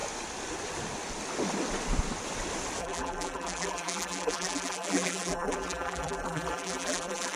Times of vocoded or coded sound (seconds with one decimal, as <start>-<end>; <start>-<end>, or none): 2.8-7.4